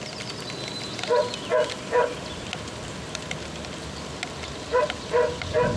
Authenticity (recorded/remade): recorded